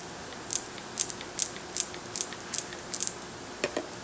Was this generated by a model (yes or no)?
no